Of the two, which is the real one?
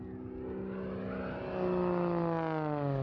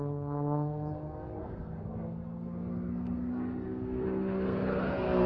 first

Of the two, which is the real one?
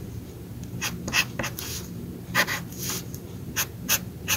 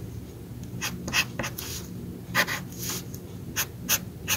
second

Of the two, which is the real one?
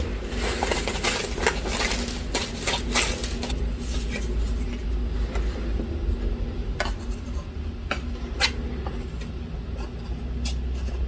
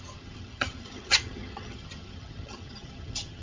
first